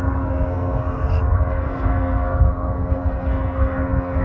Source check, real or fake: fake